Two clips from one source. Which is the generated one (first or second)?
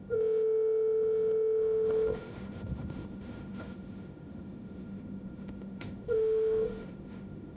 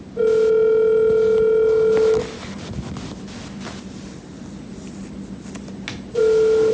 first